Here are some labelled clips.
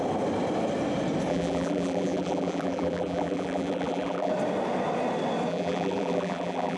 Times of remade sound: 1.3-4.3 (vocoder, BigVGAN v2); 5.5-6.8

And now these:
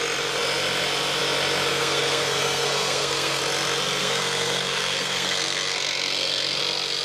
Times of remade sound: 1.7-3.4 (codec, SNAC); 4.0-6.6

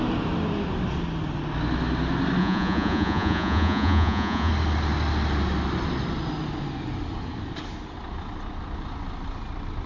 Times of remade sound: 2.4-4.5 (vocoder, Vocos)

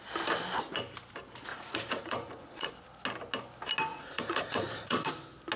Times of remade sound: 1.5-2.7 (vocoder, Vocos); 3.9-5.1

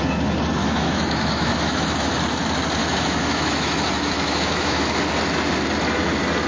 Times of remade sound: 0.6-2.1 (autoencoder, DAC-VAE); 2.8-5.0

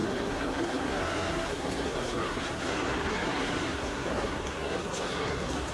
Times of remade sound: 0.0-5.7 (codec, SNAC)

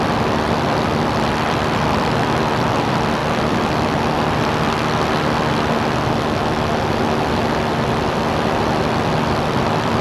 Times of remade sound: 0.0-3.2 (vocoder, BigVGAN v2); 7.3-10.0

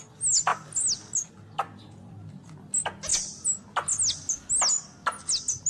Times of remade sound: none